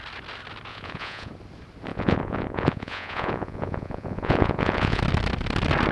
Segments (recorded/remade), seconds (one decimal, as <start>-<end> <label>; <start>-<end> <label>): 0.0-0.7 recorded; 0.7-1.3 remade; 1.3-1.9 recorded; 1.9-5.0 remade; 5.0-5.9 recorded